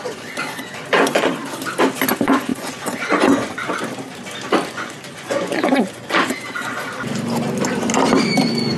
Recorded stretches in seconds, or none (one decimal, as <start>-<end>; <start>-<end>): 1.4-2.1; 3.6-4.7; 6.9-8.4